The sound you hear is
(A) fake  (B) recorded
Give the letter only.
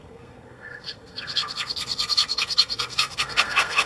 A